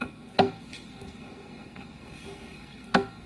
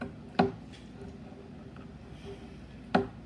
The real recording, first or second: second